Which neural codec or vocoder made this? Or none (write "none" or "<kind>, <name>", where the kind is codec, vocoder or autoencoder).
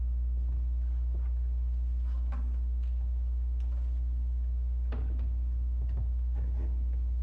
none